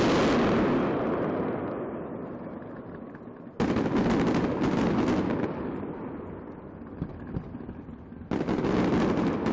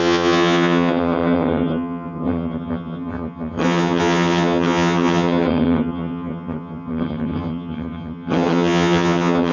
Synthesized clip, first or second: second